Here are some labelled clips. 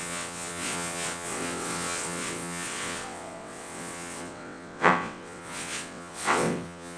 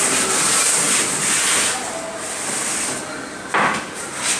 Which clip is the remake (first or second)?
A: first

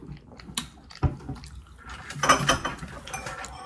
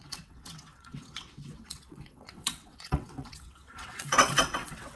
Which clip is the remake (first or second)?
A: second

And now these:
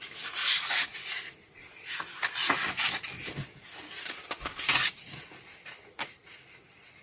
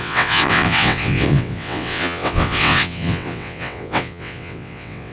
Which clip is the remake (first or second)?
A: second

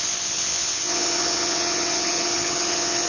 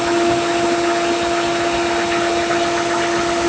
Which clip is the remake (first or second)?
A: first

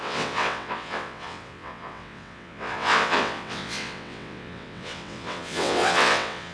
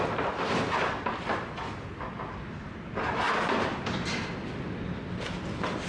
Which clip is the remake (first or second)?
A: first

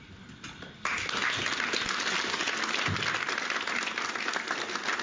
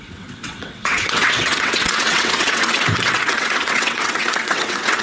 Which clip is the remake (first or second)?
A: second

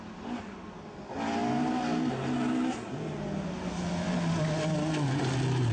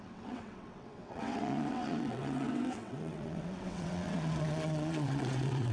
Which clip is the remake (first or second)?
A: second